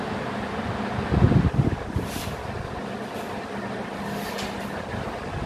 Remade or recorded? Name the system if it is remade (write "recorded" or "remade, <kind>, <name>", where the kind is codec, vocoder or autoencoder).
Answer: recorded